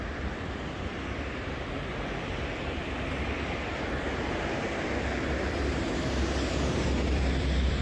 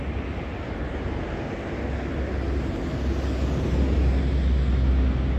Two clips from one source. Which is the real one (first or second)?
second